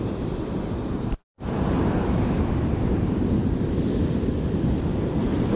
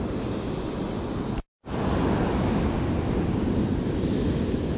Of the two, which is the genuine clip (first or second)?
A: second